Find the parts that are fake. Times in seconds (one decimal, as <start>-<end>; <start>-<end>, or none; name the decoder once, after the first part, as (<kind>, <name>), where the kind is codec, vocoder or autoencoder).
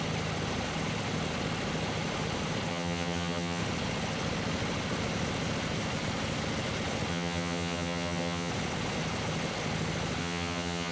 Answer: 2.7-3.6 (vocoder, HiFi-GAN); 7.1-8.5; 10.2-10.9